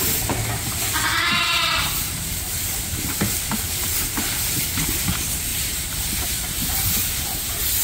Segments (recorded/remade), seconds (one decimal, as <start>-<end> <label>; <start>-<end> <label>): 0.0-5.5 recorded; 5.5-6.7 remade; 6.7-7.8 recorded